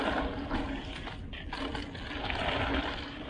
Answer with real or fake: real